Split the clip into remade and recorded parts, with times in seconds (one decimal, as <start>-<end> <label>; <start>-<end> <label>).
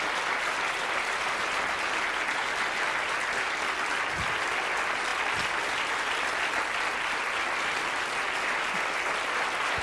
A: 0.0-9.8 recorded